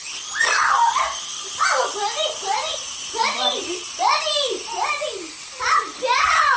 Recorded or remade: recorded